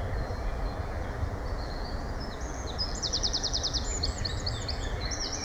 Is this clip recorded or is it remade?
remade